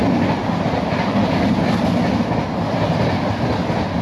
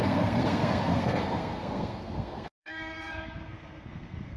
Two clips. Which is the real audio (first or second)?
first